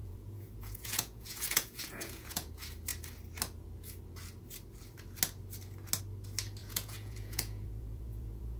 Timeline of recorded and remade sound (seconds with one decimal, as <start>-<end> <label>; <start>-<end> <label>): 0.0-2.5 remade; 2.5-6.6 recorded; 6.6-8.6 remade